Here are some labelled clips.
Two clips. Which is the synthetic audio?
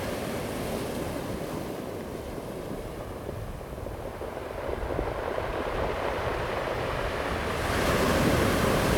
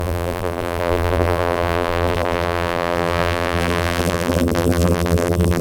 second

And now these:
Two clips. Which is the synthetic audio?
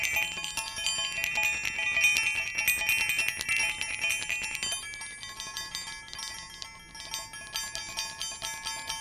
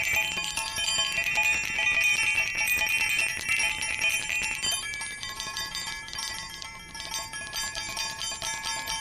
second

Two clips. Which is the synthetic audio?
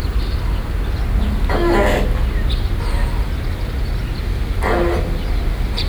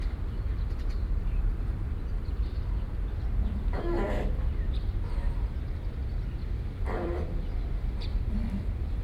second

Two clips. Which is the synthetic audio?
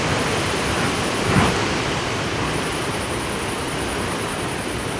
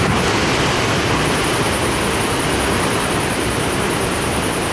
first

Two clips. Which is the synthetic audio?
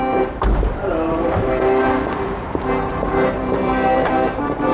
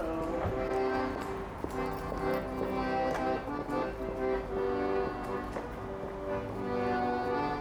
first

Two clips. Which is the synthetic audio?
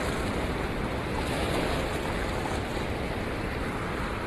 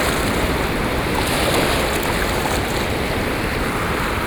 first